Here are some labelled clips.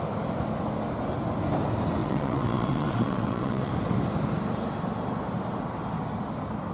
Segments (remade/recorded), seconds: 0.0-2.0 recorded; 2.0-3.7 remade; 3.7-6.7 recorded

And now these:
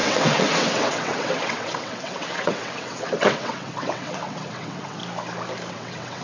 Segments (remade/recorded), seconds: 0.0-5.0 remade; 5.0-5.7 recorded; 5.7-6.2 remade

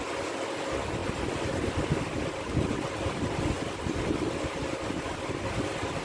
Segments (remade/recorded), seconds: 0.0-6.0 recorded

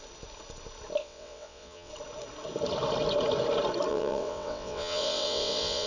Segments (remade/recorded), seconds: 0.0-1.0 recorded; 1.0-1.9 remade; 1.9-3.9 recorded; 3.9-5.9 remade

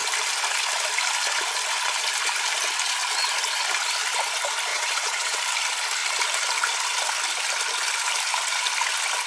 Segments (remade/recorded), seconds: 0.0-4.7 recorded; 4.7-5.4 remade; 5.4-9.3 recorded

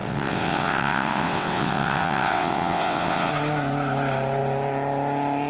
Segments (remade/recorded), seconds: 0.0-3.3 remade; 3.3-5.5 recorded

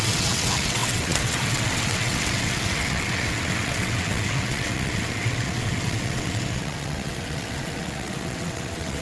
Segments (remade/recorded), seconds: 0.0-9.0 remade

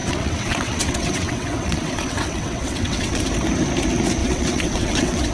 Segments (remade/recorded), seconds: 0.0-3.2 remade; 3.2-4.2 recorded; 4.2-5.3 remade